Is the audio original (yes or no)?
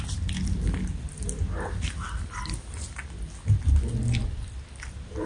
yes